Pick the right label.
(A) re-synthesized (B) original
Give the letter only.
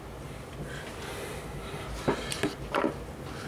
B